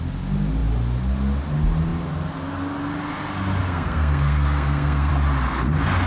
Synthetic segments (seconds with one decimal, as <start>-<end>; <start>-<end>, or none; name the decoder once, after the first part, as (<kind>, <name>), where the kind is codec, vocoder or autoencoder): 3.6-5.1 (codec, SNAC)